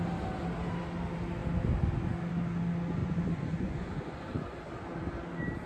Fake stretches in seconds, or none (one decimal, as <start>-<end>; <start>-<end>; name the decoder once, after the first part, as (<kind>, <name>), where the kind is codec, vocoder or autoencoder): 3.0-4.7 (vocoder, Vocos)